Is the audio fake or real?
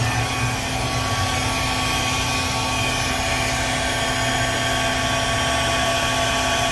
real